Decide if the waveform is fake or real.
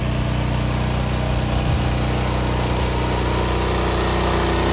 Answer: real